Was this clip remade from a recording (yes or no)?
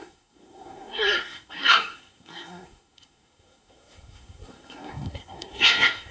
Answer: yes